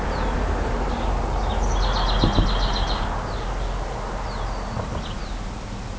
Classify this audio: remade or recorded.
recorded